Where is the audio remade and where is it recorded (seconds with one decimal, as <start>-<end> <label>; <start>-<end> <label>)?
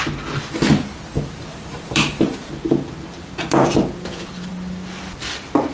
0.0-1.5 recorded; 1.5-4.5 remade; 4.5-5.7 recorded